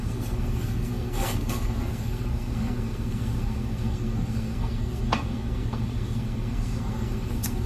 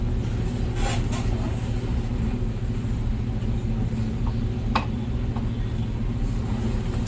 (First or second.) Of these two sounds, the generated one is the first